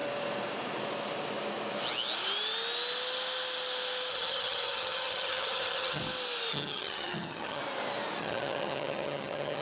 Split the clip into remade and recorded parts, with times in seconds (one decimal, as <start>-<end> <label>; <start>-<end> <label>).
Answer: 0.0-4.1 recorded; 4.1-6.0 remade; 6.0-6.5 recorded; 6.5-7.6 remade; 7.6-8.2 recorded; 8.2-9.6 remade